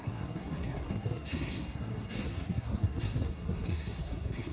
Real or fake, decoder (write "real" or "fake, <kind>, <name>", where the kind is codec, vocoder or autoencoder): fake, codec, SNAC